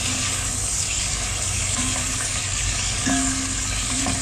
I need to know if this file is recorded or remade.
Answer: remade